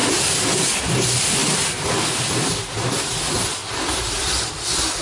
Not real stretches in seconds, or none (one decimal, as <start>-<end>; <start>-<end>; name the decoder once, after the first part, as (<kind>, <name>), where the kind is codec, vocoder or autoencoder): 0.0-0.8 (vocoder, BigVGAN v2); 1.4-2.3; 3.6-4.3